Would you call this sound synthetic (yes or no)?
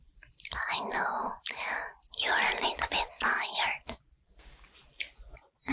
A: no